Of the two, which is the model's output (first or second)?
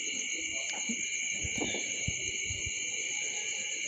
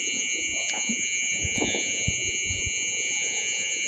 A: second